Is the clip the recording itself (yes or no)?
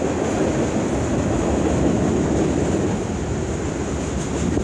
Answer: yes